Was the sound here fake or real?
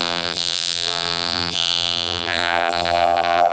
fake